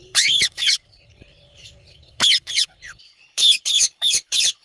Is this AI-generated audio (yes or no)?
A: yes